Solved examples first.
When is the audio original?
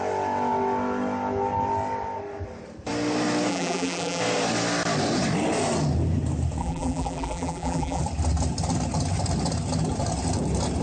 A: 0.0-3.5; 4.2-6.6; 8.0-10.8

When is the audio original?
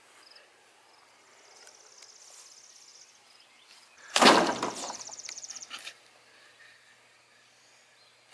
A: 0.0-2.9; 6.9-8.3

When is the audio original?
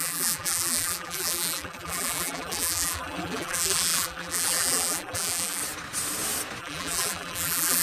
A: 5.6-6.6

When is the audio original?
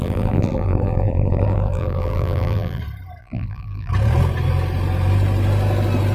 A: 2.8-3.2; 3.9-6.1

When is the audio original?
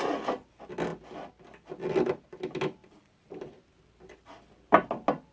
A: 0.0-2.8; 3.6-5.3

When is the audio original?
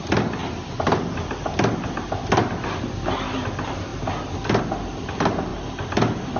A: 0.0-0.4; 1.0-6.4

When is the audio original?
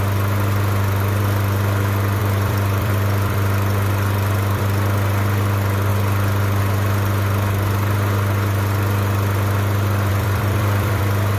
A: 0.0-2.2; 4.6-10.1; 11.0-11.4